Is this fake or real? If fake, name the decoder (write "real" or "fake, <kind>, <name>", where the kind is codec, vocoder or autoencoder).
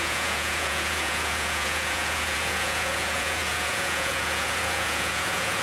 fake, vocoder, Vocos